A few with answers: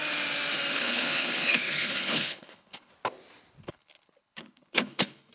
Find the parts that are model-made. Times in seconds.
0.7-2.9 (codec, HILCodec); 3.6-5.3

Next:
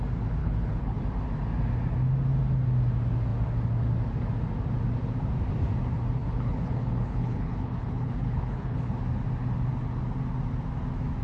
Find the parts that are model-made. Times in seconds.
0.4-1.0 (codec, HILCodec); 6.2-9.0

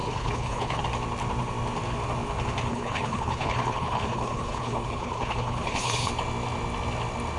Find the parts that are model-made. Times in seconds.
0.0-0.8 (codec, HILCodec); 2.7-6.1

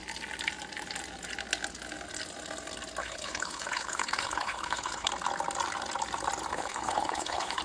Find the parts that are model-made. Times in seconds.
3.0-5.1 (codec, HILCodec); 6.5-7.6

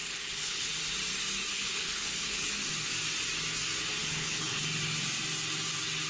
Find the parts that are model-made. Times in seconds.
0.0-0.8 (codec, HILCodec); 1.5-2.5; 4.0-4.6

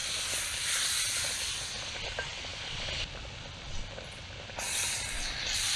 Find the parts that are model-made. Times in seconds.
none